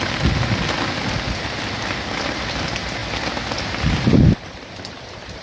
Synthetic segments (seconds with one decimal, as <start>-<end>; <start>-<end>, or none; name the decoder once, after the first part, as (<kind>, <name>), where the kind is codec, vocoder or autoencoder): none